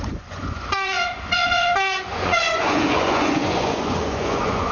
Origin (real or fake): fake